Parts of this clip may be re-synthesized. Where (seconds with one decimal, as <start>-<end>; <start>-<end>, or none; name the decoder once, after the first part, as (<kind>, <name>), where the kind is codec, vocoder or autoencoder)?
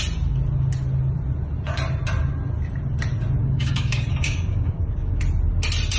3.4-5.2 (codec, DAC)